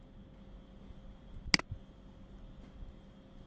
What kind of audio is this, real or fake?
real